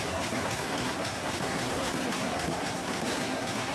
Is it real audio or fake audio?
fake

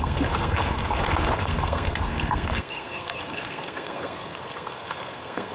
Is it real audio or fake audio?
fake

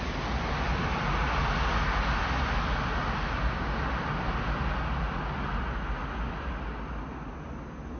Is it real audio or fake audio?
real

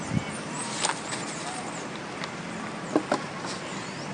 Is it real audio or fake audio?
real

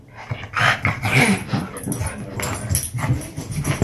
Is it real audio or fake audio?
real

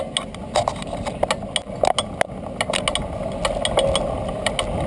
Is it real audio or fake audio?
real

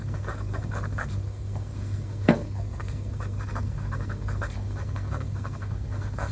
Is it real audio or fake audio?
fake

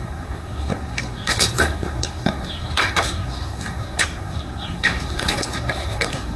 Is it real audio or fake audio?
fake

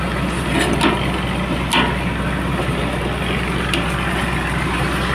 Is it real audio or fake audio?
real